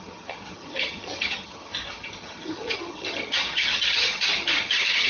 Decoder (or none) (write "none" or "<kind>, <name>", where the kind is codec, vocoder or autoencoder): vocoder, HiFi-GAN